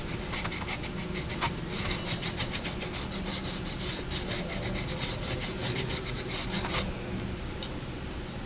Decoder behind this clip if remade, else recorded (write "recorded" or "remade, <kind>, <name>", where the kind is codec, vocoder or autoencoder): recorded